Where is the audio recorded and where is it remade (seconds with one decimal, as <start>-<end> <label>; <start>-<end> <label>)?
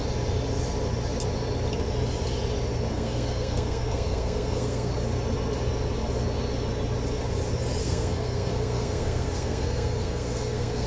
0.0-2.9 recorded; 2.9-4.9 remade; 4.9-7.8 recorded; 7.8-10.9 remade